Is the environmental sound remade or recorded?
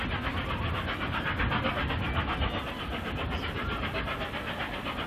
recorded